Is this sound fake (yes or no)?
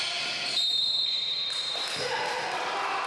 no